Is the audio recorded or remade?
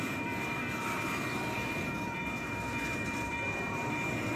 remade